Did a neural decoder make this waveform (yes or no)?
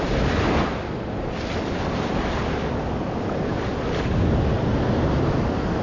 no